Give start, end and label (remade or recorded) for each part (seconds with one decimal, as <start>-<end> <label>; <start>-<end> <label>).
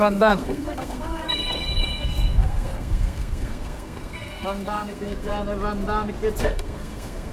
0.0-5.3 remade; 5.3-6.4 recorded; 6.4-7.3 remade